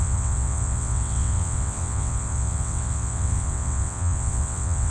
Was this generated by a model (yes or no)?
yes